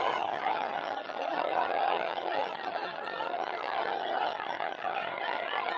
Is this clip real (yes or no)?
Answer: no